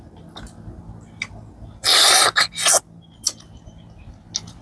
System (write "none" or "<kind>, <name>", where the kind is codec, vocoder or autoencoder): none